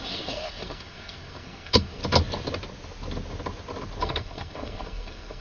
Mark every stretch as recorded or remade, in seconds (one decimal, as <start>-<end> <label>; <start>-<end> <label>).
0.0-2.0 remade; 2.0-4.0 recorded; 4.0-5.4 remade